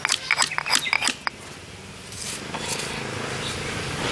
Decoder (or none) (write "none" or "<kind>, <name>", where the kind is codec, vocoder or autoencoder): none